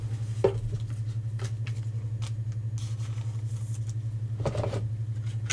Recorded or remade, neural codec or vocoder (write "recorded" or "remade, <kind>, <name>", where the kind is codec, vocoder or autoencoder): recorded